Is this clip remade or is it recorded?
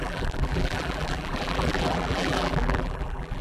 remade